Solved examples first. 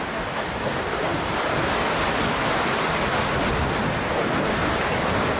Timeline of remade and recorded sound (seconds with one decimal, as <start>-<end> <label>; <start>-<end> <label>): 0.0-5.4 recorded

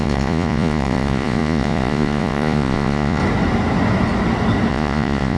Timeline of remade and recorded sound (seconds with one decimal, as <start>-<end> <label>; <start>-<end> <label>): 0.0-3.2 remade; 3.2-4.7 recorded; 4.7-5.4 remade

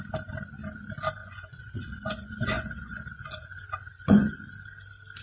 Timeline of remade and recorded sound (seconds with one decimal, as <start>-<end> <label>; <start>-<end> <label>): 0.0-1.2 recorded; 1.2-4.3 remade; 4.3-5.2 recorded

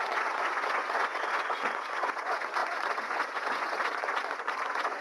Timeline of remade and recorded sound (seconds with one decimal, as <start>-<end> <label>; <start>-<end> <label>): 0.0-5.0 remade